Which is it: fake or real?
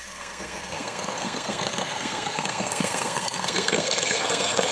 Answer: fake